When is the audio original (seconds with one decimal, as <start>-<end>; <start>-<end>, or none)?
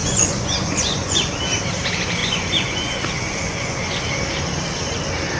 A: 1.3-2.2; 4.0-5.4